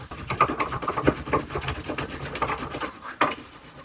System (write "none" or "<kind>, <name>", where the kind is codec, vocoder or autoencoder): none